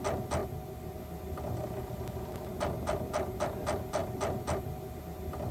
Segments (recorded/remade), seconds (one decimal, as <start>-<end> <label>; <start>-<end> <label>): 0.0-5.5 recorded